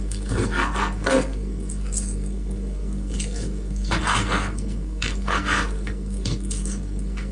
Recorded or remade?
remade